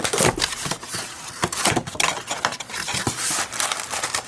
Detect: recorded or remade recorded